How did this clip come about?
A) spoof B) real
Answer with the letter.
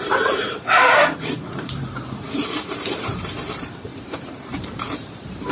A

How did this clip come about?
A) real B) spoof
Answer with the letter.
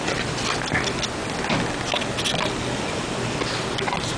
A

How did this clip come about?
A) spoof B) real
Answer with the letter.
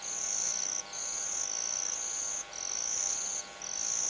B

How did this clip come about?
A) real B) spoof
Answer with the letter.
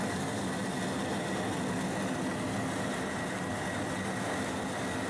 A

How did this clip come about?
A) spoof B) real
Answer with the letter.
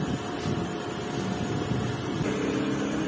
B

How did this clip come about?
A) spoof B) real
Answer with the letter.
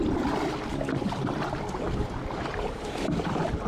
A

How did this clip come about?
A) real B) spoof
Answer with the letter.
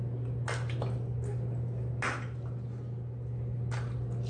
A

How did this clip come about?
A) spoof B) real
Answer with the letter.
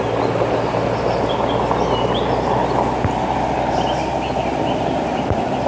B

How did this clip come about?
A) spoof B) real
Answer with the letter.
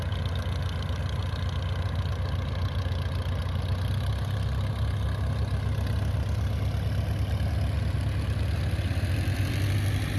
B